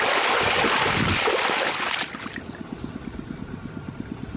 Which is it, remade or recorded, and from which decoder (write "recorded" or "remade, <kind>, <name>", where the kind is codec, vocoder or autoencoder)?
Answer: recorded